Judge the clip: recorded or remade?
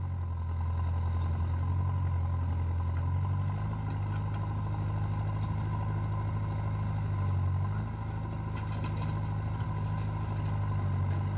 recorded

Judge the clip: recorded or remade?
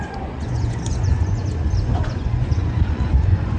remade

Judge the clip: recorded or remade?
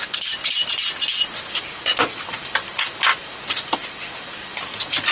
recorded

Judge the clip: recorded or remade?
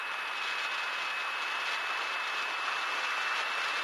recorded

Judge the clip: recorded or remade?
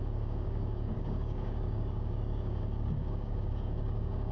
remade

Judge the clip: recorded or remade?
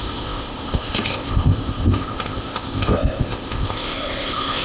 remade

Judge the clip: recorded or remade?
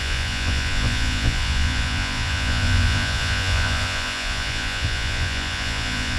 remade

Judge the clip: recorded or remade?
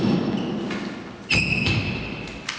recorded